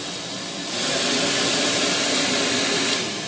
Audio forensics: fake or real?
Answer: real